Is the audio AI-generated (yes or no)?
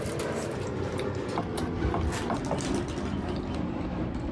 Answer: no